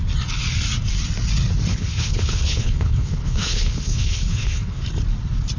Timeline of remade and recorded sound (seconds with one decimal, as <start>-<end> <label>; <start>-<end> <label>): 0.0-1.7 recorded; 1.7-4.8 remade; 4.8-5.6 recorded